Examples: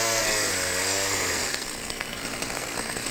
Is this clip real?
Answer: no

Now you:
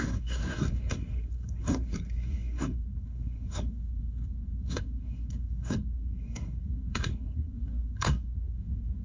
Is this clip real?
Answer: no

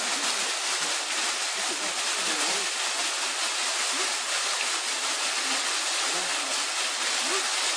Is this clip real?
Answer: yes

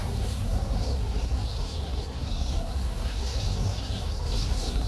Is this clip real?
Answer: no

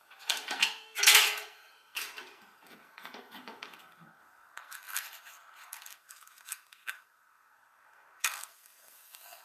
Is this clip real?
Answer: no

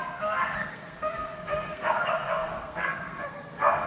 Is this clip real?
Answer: no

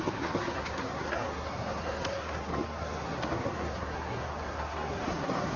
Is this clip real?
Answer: no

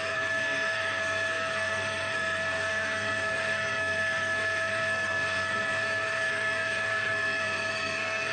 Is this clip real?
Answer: no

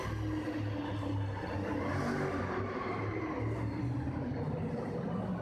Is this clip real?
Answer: yes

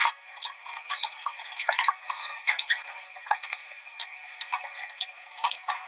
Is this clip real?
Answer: no